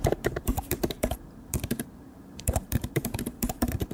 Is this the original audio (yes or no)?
no